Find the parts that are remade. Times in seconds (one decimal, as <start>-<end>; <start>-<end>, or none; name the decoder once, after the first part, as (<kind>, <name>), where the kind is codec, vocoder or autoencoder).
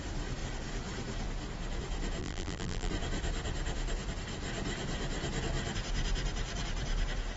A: 2.2-2.9 (vocoder, BigVGAN v2)